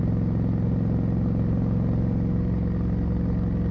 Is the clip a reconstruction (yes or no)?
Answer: no